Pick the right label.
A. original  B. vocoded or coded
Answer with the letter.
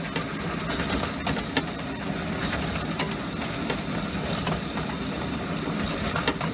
A